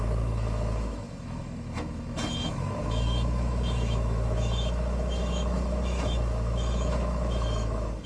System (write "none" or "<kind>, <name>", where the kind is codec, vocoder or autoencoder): autoencoder, DAC-VAE